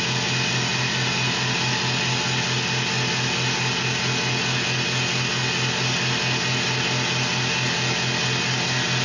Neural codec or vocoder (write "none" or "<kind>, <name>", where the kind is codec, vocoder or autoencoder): none